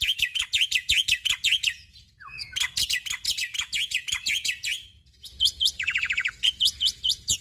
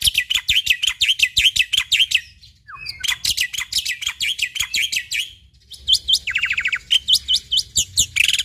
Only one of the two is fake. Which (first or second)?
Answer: first